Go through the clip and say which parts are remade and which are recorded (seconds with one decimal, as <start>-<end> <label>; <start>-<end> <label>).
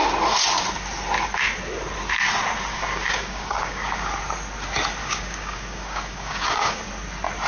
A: 0.0-2.7 recorded; 2.7-4.1 remade; 4.1-5.0 recorded; 5.0-6.9 remade; 6.9-7.5 recorded